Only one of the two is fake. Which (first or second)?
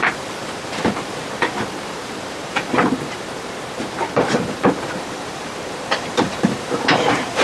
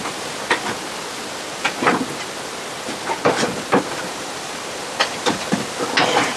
first